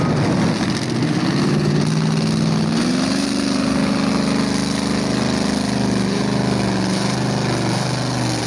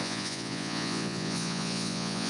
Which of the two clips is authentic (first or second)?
first